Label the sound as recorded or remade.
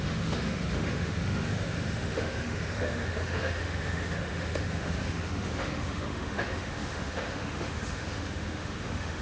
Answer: remade